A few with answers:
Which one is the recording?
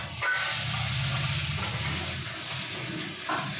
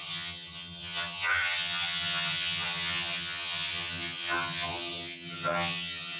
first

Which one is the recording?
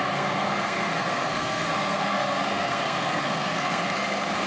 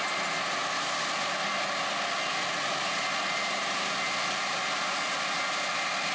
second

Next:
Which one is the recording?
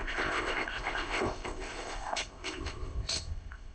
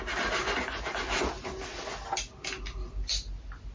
second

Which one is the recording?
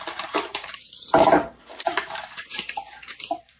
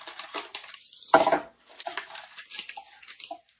second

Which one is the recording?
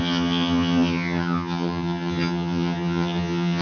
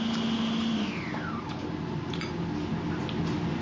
second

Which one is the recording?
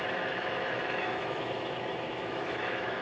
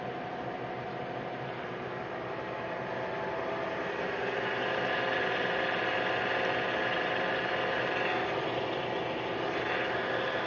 second